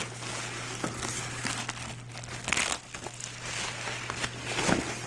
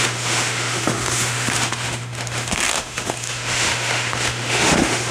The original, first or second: first